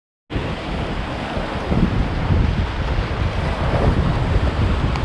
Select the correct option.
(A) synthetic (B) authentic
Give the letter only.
B